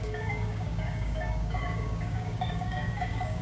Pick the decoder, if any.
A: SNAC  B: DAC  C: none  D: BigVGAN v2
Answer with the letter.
B